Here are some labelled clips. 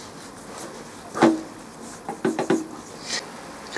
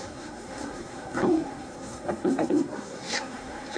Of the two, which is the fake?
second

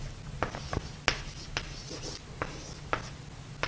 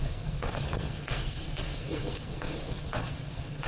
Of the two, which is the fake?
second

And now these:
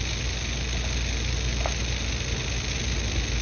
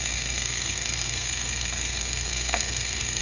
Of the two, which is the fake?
second